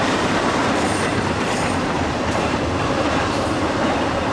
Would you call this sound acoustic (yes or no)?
no